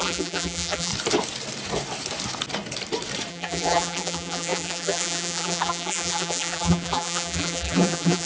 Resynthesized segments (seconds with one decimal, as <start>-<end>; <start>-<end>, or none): 0.0-0.9; 3.3-8.3